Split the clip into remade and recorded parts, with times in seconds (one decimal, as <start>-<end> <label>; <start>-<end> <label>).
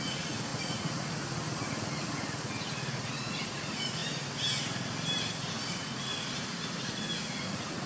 0.0-4.0 remade; 4.0-5.5 recorded; 5.5-6.1 remade; 6.1-6.8 recorded; 6.8-7.9 remade